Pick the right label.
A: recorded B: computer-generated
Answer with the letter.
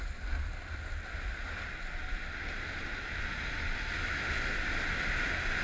A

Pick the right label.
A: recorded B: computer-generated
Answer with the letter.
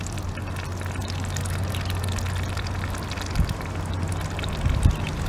A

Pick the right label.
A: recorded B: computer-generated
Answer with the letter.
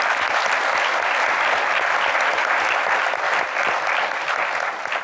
A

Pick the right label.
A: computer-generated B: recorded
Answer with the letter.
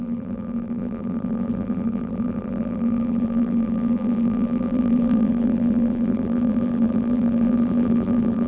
A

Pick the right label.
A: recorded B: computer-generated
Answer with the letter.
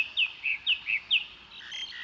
A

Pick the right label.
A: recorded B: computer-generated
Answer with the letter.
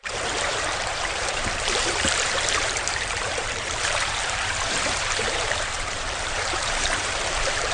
B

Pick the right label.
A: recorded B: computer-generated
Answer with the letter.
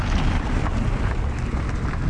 A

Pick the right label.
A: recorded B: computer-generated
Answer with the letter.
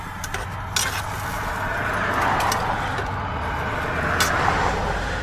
A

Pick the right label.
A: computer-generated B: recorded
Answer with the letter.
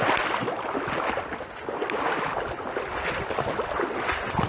B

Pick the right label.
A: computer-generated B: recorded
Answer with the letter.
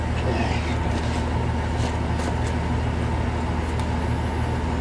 B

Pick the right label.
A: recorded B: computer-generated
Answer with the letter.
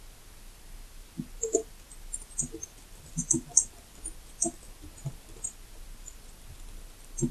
A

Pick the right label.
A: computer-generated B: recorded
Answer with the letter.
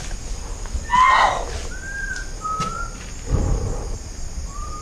B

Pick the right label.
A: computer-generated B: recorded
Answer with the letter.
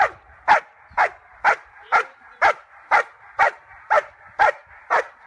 A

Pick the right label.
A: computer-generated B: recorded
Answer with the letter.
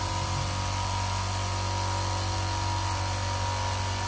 B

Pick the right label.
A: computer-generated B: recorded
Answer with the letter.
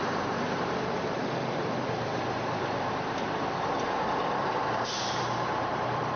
A